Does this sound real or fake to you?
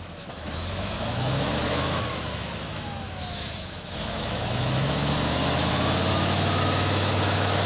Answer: fake